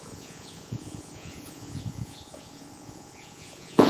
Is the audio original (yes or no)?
no